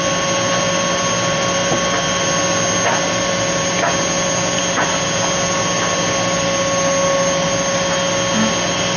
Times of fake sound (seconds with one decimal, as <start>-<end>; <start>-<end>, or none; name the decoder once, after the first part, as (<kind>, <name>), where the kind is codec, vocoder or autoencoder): none